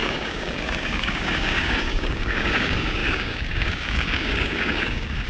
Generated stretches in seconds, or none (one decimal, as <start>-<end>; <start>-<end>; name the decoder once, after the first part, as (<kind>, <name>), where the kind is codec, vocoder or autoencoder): 0.0-5.3 (codec, DAC)